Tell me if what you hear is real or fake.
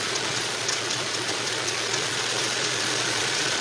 fake